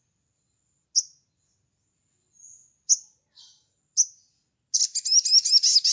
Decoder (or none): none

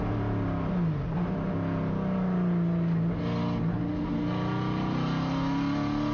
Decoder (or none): none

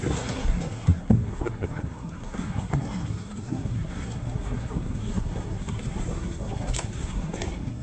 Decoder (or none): codec, SNAC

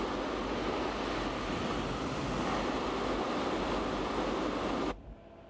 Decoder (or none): none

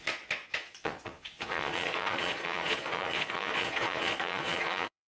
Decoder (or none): vocoder, Vocos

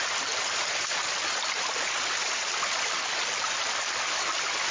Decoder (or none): none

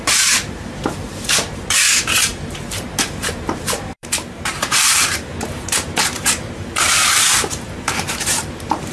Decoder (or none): vocoder, BigVGAN v2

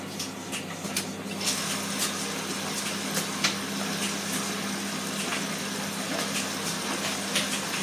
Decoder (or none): none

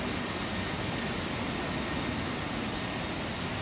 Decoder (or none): none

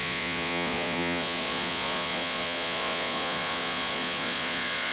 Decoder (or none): vocoder, Vocos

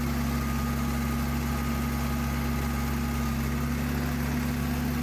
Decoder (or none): none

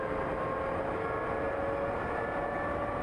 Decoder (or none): none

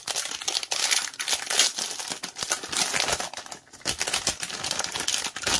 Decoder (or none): none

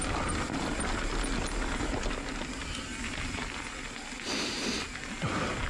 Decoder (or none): none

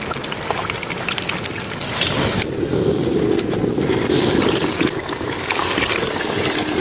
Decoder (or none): none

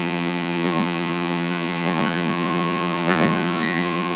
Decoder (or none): vocoder, Vocos